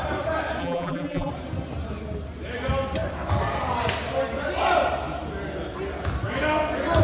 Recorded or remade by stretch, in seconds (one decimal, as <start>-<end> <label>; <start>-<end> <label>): 0.0-0.6 recorded; 0.6-1.3 remade; 1.3-7.0 recorded

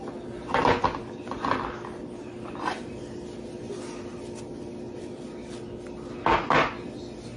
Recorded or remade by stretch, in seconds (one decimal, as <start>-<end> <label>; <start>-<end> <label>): 0.0-2.0 recorded; 2.0-3.0 remade; 3.0-7.4 recorded